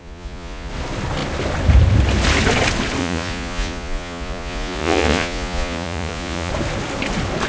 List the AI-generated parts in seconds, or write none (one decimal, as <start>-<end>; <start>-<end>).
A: 0.0-0.7; 3.0-6.5